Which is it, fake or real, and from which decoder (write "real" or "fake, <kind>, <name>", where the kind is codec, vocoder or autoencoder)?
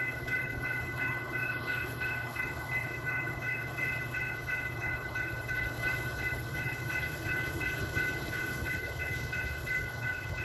fake, codec, HILCodec